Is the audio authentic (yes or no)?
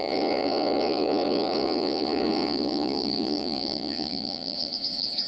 no